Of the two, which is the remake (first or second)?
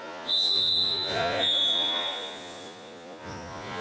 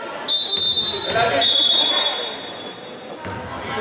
first